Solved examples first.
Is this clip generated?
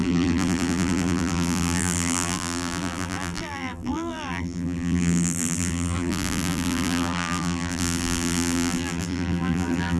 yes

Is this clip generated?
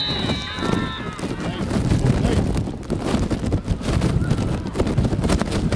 no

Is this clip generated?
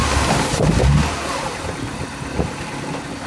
no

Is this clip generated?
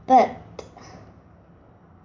no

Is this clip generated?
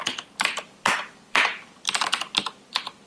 yes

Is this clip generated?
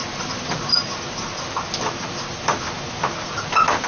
no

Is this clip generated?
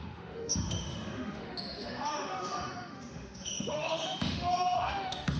yes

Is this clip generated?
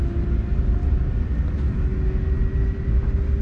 no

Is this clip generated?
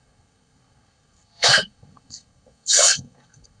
yes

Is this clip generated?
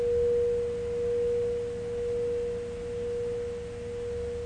no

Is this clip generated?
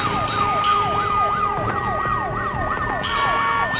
no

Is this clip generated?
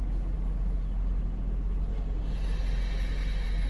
no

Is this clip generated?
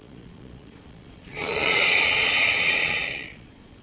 yes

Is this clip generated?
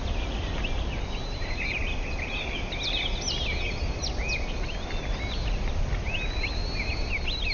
no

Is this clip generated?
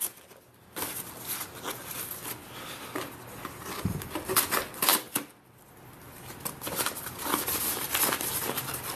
no